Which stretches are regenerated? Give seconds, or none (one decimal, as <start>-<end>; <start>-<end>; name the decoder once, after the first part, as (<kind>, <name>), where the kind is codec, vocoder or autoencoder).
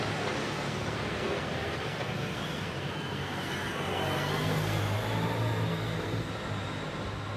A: 0.4-4.8 (codec, SNAC); 5.7-6.3